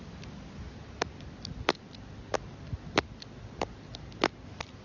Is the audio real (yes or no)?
yes